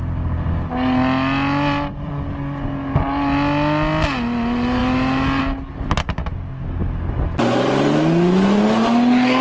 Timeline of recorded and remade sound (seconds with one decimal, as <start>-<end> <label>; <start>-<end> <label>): 0.0-9.4 recorded